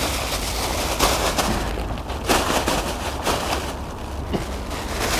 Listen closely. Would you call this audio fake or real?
real